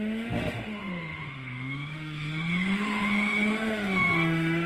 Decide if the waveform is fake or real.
fake